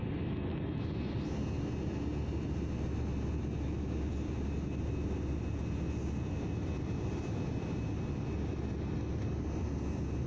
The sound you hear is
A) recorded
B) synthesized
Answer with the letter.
A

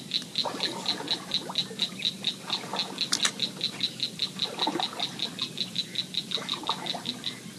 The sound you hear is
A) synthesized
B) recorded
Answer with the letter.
B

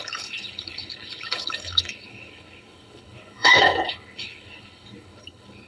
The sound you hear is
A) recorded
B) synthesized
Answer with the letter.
B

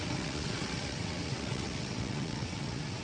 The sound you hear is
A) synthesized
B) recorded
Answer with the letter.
A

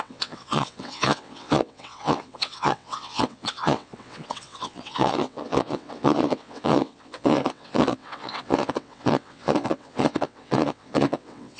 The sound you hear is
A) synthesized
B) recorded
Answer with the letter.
A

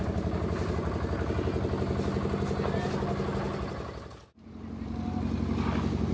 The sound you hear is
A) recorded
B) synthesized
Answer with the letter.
A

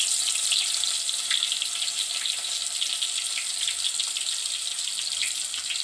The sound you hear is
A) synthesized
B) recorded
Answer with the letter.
B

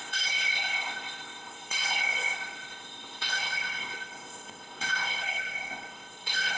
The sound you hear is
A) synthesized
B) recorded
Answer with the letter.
A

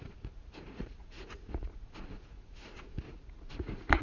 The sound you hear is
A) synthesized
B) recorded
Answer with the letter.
A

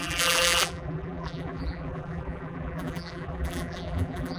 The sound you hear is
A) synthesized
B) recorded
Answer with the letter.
A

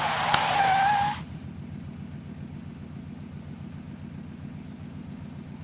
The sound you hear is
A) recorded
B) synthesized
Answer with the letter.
A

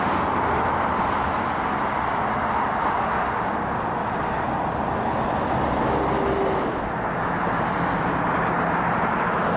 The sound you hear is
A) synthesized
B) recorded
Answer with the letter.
B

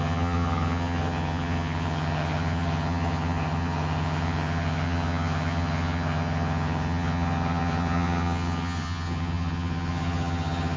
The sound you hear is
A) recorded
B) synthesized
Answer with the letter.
B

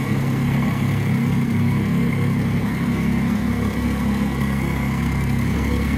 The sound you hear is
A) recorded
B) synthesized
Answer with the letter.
B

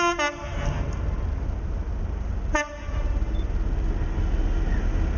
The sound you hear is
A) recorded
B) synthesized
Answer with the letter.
A